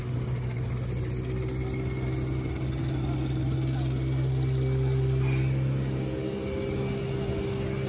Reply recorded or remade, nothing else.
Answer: recorded